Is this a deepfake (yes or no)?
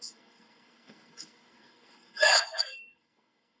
yes